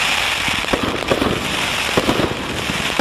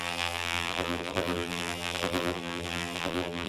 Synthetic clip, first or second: second